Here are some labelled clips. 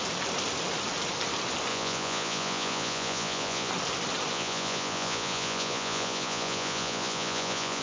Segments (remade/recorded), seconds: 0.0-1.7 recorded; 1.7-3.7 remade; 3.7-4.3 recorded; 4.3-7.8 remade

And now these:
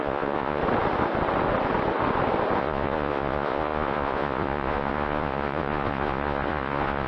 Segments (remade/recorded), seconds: 0.0-0.6 remade; 0.6-2.6 recorded; 2.6-7.1 remade